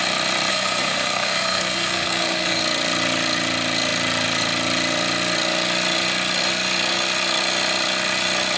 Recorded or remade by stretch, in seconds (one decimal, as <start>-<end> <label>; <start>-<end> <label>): 0.0-0.5 recorded; 0.5-2.6 remade; 2.6-8.6 recorded

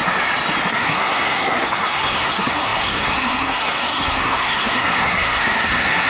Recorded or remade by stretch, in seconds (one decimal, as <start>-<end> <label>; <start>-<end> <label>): 0.0-0.7 recorded; 0.7-6.1 remade

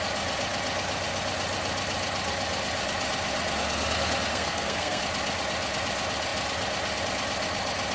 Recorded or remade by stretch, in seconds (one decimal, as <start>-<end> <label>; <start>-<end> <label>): 0.0-4.3 recorded; 4.3-5.0 remade; 5.0-7.9 recorded

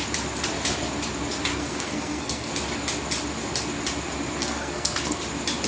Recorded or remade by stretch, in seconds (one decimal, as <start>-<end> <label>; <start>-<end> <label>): 0.0-1.5 recorded; 1.5-2.5 remade; 2.5-4.4 recorded; 4.4-5.2 remade; 5.2-5.7 recorded

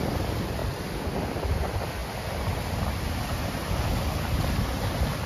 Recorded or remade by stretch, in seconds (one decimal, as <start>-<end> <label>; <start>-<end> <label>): 0.0-5.3 recorded